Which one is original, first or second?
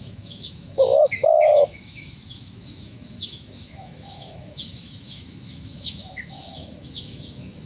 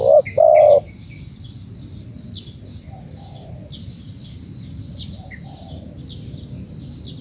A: second